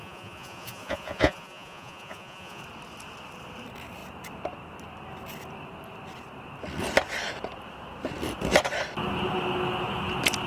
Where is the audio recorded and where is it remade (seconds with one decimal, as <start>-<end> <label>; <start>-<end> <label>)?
0.0-2.6 remade; 2.6-10.5 recorded